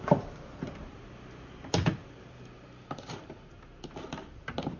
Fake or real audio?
real